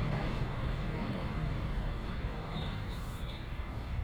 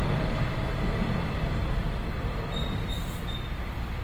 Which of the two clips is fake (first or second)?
first